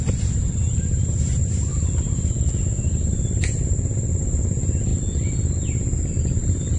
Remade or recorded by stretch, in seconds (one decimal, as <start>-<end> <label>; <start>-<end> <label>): 0.0-1.7 remade; 1.7-2.9 recorded; 2.9-4.9 remade; 4.9-6.2 recorded; 6.2-6.8 remade